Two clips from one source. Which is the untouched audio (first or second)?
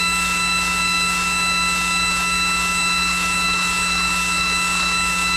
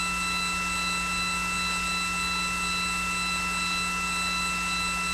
second